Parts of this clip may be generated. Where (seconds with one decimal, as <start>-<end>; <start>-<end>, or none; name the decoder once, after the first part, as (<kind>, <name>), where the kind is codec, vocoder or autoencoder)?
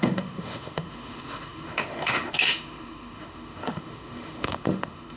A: 0.0-5.2 (autoencoder, DAC-VAE)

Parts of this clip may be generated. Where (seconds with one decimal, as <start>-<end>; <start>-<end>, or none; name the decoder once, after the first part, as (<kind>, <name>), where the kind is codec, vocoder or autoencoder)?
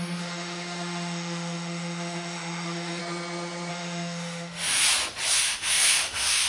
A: 0.0-3.0 (autoencoder, DAC-VAE); 3.7-4.8; 5.3-6.5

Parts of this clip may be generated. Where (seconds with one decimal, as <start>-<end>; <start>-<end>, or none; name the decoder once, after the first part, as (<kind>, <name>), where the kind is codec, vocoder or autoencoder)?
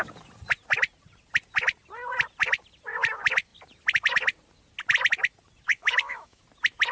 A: 5.7-6.4 (autoencoder, DAC-VAE)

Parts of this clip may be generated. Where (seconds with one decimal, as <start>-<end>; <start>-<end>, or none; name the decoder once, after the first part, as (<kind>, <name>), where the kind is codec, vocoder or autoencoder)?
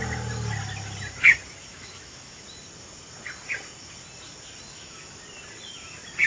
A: 1.6-2.4 (autoencoder, DAC-VAE); 4.7-5.2